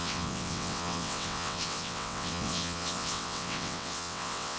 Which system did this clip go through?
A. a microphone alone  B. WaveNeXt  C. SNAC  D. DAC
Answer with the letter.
B